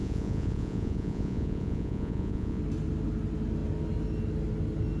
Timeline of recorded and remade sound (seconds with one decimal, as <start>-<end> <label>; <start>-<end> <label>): 0.0-2.6 remade; 2.6-5.0 recorded